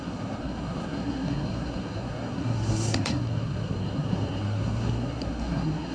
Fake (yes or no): yes